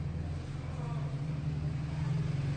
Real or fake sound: real